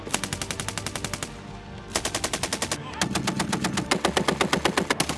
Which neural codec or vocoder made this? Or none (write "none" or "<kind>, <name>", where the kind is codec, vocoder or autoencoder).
none